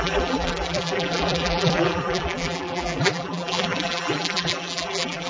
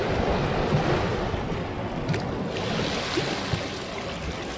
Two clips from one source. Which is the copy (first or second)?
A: first